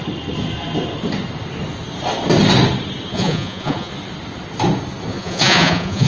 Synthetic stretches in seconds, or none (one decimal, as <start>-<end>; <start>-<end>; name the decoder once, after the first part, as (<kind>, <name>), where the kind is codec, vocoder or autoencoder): 3.1-3.9 (vocoder, Vocos); 5.1-6.1